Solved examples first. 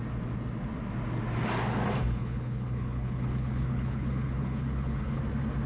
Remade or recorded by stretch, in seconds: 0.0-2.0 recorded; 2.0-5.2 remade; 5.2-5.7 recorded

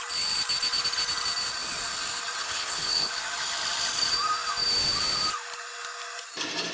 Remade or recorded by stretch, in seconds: 0.0-2.4 recorded; 2.4-3.1 remade; 3.1-6.7 recorded

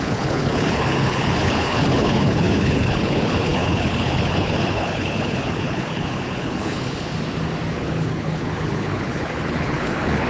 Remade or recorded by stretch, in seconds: 0.0-7.1 remade; 7.1-7.7 recorded; 7.7-10.3 remade

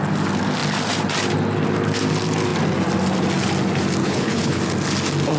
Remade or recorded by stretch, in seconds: 0.0-4.0 recorded; 4.0-4.6 remade; 4.6-5.4 recorded

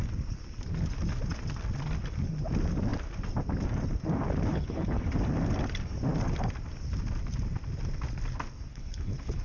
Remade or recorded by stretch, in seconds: 0.0-4.5 recorded; 4.5-5.0 remade; 5.0-8.7 recorded; 8.7-9.4 remade